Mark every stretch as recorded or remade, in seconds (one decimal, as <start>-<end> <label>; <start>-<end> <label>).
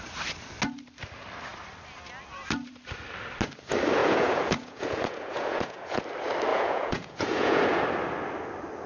0.0-4.0 recorded; 4.0-6.0 remade; 6.0-6.5 recorded; 6.5-7.8 remade; 7.8-8.9 recorded